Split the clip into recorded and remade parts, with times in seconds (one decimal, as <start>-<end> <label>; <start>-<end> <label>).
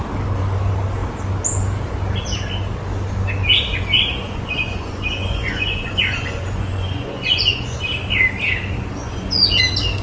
0.0-3.4 recorded; 3.4-7.8 remade; 7.8-9.0 recorded; 9.0-9.6 remade; 9.6-10.0 recorded